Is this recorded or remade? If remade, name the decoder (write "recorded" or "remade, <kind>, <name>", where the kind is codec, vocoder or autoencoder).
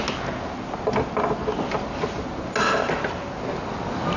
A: recorded